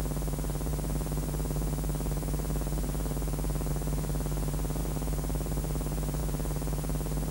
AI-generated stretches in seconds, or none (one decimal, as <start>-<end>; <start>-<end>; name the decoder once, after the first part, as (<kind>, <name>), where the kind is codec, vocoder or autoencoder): none